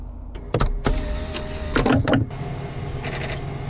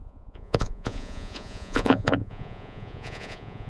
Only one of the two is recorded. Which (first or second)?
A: first